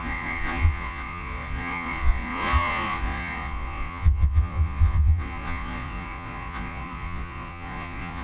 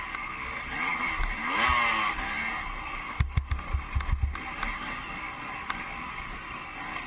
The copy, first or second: first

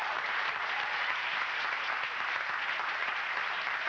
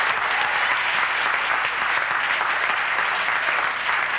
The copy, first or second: first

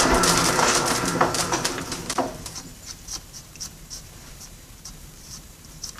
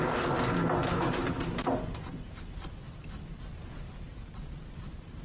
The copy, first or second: first